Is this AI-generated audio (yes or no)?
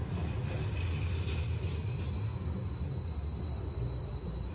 no